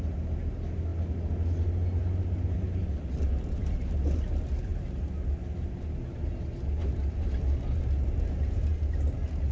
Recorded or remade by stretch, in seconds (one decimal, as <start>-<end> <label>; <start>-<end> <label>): 0.0-9.5 recorded